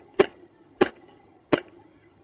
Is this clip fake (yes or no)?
yes